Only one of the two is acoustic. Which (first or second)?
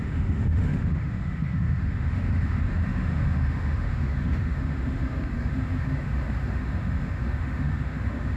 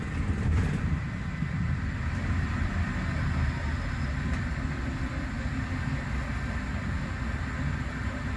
second